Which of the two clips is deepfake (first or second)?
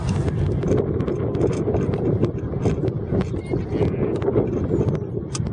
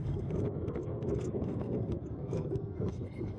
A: second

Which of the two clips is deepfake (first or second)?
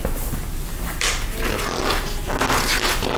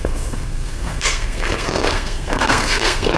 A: second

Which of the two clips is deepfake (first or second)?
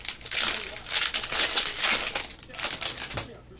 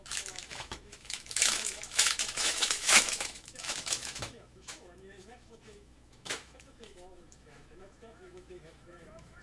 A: second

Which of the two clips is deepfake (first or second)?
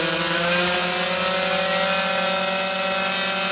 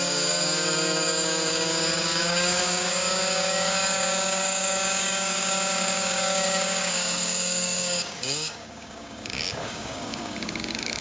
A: second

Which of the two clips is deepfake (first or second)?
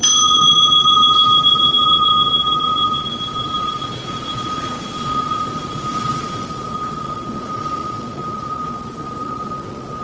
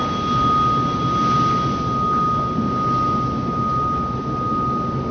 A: first